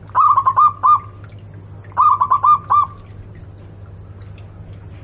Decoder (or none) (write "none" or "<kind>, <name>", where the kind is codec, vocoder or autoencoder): none